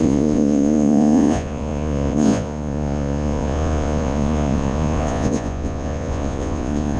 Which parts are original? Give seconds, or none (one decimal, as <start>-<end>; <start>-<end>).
none

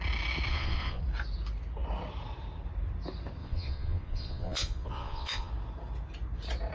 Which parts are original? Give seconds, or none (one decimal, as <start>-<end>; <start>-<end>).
0.0-0.5; 1.0-3.4; 5.5-6.7

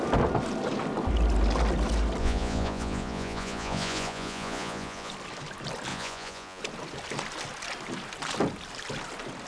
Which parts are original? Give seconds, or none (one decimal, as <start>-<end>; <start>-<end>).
0.0-2.2; 5.1-5.9; 6.6-9.5

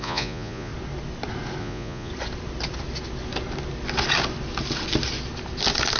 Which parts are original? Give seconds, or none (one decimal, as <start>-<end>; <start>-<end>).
0.7-1.6; 2.1-6.0

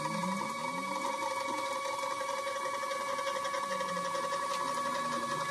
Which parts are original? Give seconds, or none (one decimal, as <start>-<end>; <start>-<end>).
0.0-5.5

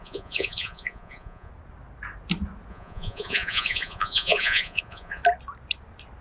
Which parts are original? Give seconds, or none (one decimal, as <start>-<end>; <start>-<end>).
1.5-2.7; 5.2-6.2

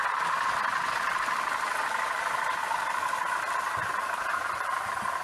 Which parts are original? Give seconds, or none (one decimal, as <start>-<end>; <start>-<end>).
0.0-5.2